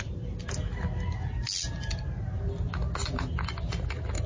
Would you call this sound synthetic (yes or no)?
no